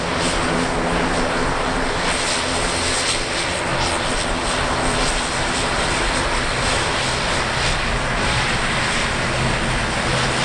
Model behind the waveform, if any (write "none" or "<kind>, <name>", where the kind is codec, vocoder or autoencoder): none